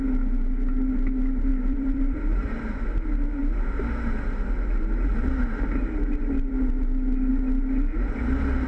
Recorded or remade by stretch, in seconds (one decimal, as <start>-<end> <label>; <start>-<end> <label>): 0.0-1.5 recorded; 1.5-2.5 remade; 2.5-8.7 recorded